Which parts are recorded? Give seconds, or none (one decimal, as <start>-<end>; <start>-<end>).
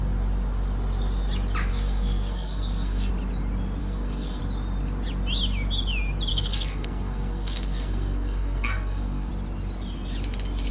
0.0-1.7; 3.1-3.8; 4.4-6.3; 9.3-10.7